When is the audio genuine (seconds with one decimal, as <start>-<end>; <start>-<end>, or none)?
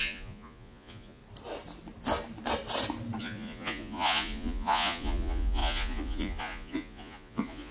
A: 1.2-3.2